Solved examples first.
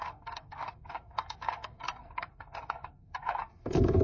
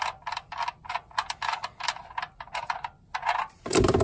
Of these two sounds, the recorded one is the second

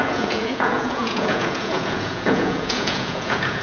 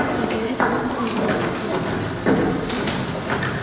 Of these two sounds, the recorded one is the second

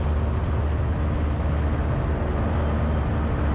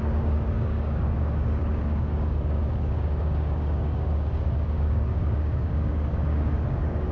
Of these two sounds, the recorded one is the first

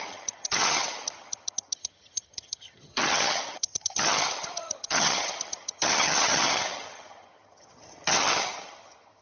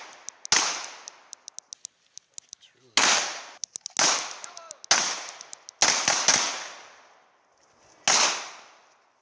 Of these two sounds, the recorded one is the second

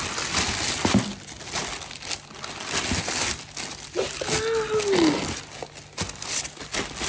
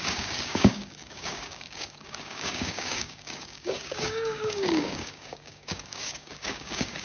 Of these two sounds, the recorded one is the first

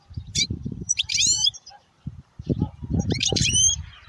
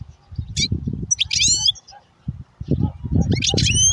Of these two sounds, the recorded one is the second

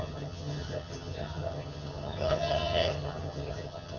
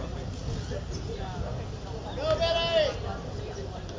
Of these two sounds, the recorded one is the second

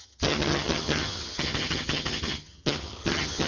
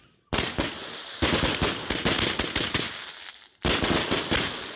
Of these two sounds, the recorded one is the second